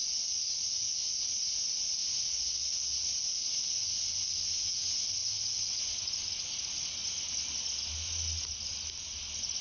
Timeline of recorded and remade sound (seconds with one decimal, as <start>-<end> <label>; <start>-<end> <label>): 0.0-4.4 remade; 4.4-5.2 recorded; 5.2-6.5 remade; 6.5-7.0 recorded; 7.0-7.8 remade; 7.8-9.6 recorded